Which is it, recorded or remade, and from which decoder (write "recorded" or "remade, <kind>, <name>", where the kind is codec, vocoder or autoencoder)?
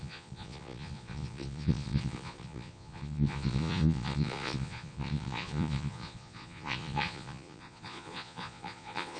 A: remade, vocoder, Vocos